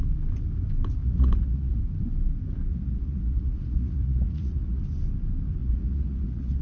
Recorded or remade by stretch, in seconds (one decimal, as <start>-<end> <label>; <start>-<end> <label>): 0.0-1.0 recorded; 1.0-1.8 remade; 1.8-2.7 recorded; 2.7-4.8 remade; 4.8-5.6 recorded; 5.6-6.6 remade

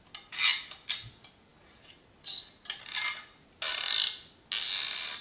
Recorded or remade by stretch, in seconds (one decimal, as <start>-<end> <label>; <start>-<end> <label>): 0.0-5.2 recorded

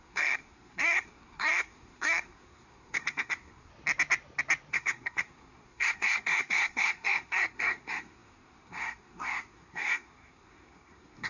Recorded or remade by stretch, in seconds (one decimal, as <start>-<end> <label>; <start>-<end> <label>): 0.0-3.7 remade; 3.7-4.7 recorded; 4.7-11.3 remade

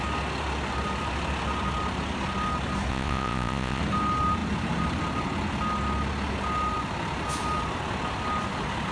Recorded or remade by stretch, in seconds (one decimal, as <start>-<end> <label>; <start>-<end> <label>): 0.0-2.9 recorded; 2.9-3.8 remade; 3.8-8.9 recorded

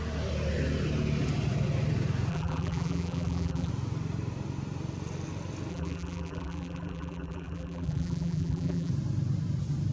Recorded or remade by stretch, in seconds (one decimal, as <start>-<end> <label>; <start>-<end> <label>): 0.0-2.3 recorded; 2.3-3.7 remade; 3.7-5.7 recorded; 5.7-8.9 remade; 8.9-9.9 recorded

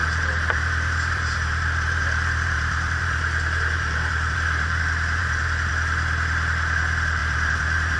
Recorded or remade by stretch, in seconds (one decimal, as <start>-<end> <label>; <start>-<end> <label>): 0.0-4.8 remade; 4.8-5.2 recorded; 5.2-5.7 remade; 5.7-7.2 recorded; 7.2-8.0 remade

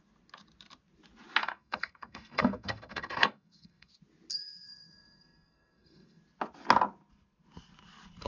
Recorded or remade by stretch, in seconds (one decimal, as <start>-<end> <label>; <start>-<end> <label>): 0.0-1.4 recorded; 1.4-3.9 remade; 3.9-4.3 recorded; 4.3-6.2 remade; 6.2-8.3 recorded